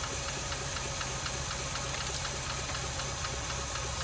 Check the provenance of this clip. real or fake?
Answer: real